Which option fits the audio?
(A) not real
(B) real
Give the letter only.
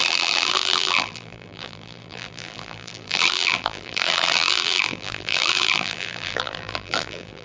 A